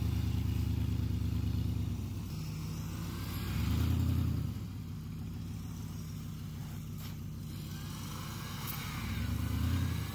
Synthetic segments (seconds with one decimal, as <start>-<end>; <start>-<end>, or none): none